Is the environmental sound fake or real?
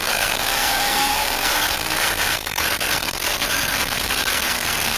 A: fake